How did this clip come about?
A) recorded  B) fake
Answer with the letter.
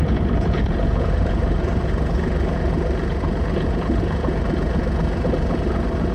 B